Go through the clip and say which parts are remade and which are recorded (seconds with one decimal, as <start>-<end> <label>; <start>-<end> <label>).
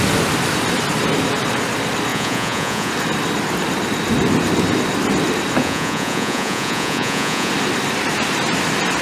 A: 0.0-2.1 recorded; 2.1-2.9 remade; 2.9-5.6 recorded; 5.6-7.5 remade; 7.5-9.0 recorded